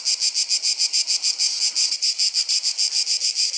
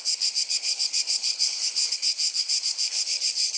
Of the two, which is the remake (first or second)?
second